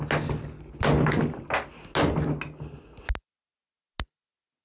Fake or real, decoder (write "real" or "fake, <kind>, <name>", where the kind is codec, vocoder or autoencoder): real